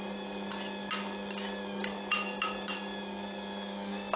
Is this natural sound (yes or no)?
yes